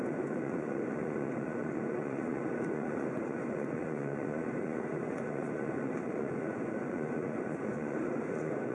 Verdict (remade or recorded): remade